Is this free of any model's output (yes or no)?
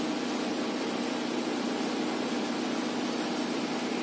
yes